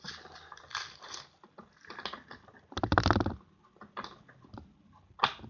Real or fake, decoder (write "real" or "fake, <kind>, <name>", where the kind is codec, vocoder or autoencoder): real